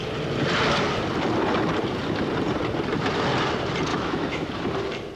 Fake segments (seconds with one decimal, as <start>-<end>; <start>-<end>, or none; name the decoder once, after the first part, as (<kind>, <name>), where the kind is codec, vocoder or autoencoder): 3.9-4.5 (autoencoder, DAC-VAE)